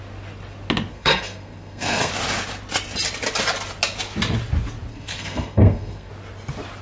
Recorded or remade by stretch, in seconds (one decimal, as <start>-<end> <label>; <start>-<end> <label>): 0.0-0.9 recorded; 0.9-2.1 remade; 2.1-4.9 recorded; 4.9-6.1 remade; 6.1-6.8 recorded